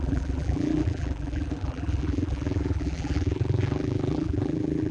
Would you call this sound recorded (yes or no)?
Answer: no